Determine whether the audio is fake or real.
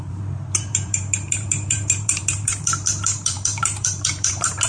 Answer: fake